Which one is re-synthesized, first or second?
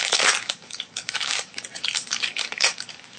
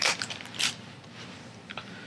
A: first